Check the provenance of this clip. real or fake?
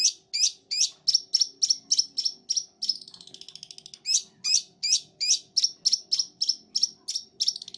real